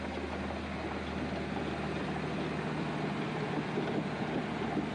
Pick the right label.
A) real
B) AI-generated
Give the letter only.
A